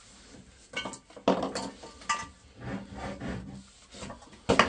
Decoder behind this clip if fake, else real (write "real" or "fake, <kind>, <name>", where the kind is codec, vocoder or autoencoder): real